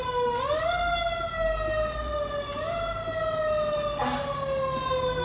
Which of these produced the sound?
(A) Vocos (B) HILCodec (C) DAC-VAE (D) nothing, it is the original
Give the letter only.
D